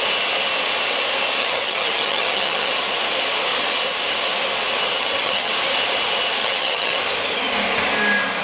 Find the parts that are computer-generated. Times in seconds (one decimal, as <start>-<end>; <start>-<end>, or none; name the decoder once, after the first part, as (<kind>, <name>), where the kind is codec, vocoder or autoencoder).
1.4-2.7 (vocoder, HiFi-GAN); 5.0-5.5; 6.4-7.0